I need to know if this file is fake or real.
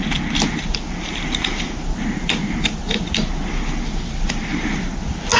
real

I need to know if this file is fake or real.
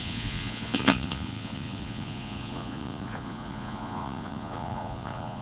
fake